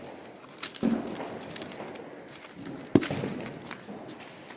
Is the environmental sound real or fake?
real